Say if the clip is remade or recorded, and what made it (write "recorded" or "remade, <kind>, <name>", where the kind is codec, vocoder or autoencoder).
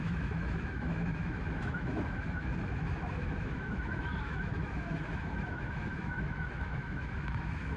remade, autoencoder, DAC-VAE